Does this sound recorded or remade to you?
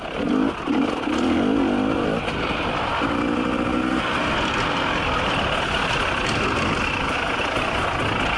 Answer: recorded